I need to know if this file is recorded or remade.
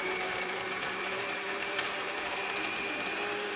remade